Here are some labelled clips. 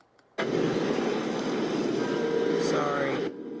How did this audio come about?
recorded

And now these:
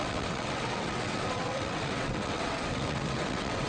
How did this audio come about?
remade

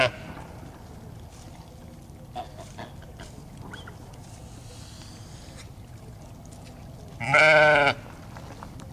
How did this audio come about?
recorded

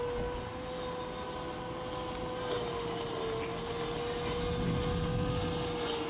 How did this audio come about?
recorded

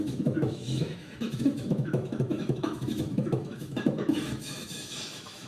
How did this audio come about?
remade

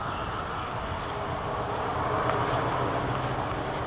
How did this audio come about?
recorded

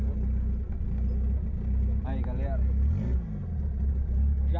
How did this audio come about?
recorded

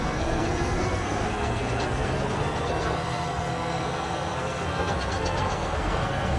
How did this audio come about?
remade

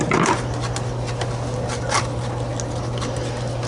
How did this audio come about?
recorded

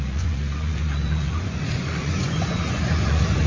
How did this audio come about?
remade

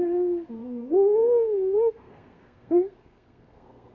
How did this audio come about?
remade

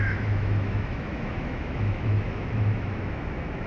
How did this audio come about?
remade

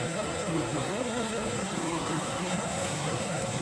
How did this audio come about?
remade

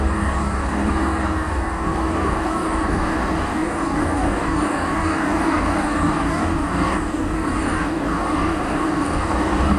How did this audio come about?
remade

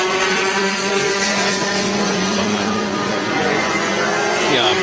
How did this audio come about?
remade